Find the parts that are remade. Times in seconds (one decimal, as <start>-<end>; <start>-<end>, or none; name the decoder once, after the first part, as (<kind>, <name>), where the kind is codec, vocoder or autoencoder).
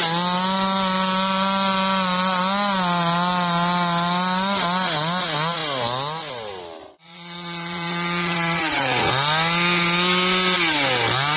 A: 6.8-9.1 (vocoder, Vocos)